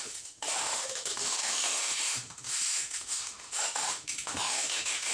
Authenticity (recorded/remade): remade